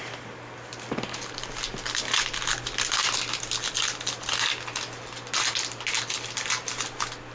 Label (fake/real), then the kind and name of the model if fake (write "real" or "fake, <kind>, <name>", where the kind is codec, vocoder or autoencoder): real